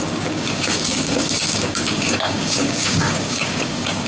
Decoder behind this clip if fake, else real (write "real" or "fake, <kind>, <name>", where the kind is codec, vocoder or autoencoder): fake, codec, DAC